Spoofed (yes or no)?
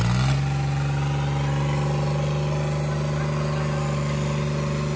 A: no